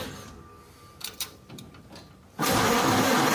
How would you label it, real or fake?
real